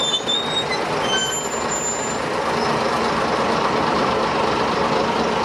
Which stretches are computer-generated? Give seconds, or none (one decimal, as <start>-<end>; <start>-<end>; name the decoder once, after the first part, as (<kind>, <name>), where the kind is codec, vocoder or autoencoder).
none